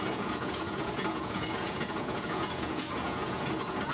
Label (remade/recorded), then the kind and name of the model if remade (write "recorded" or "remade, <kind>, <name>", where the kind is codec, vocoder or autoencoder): remade, vocoder, Vocos